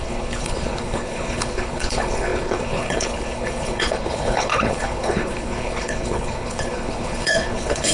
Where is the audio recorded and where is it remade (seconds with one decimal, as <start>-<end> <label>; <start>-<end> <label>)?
0.0-7.9 remade